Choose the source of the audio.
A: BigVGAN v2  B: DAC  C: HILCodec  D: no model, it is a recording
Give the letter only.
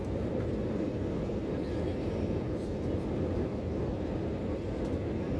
A